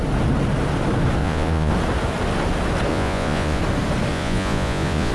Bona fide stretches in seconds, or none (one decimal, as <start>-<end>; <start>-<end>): 0.0-1.2; 1.7-2.9; 3.6-4.1